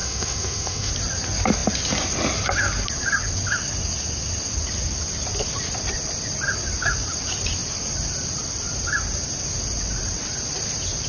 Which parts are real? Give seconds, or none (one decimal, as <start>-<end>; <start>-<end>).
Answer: 0.9-11.1